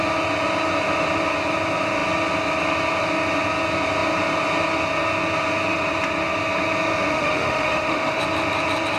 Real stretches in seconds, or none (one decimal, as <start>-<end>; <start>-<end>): 0.0-7.1; 8.2-9.0